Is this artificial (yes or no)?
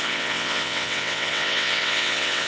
yes